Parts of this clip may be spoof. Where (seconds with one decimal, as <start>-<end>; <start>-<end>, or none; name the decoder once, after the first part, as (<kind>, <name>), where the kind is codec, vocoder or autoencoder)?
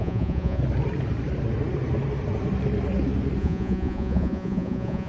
0.0-0.6 (vocoder, Vocos); 3.4-5.1